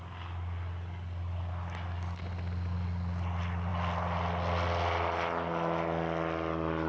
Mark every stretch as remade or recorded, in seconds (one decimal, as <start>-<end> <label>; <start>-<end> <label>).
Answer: 0.0-6.9 recorded